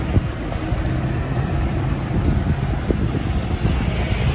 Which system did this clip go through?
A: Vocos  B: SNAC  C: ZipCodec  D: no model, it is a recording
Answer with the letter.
D